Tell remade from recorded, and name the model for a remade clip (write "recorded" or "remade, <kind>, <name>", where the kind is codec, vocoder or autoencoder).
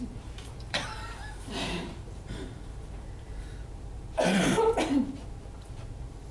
remade, vocoder, BigVGAN v2